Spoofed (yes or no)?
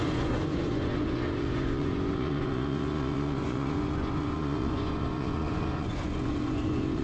yes